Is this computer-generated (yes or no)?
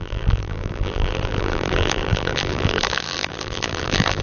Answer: yes